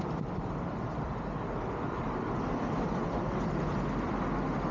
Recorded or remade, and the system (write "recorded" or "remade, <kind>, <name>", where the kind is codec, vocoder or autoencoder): recorded